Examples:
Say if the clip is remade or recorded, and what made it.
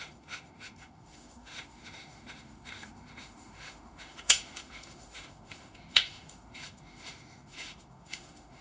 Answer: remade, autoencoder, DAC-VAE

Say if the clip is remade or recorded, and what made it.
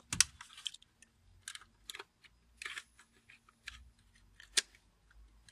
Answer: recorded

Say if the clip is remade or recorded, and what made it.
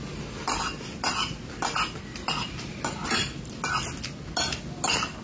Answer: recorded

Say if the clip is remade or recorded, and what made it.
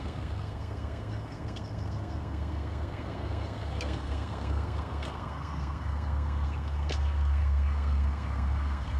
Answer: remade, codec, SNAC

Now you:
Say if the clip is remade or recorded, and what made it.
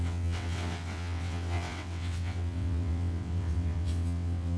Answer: remade, vocoder, WaveNeXt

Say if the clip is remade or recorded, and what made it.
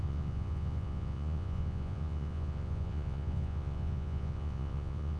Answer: remade, vocoder, Vocos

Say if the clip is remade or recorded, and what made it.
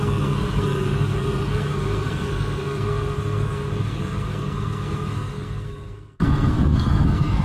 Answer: remade, codec, SNAC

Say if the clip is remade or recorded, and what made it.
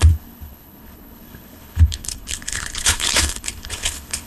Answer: remade, codec, HILCodec